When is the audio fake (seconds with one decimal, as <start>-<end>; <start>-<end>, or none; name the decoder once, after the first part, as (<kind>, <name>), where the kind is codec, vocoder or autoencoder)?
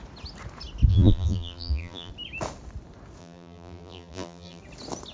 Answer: 0.9-2.1 (vocoder, BigVGAN v2); 3.2-4.6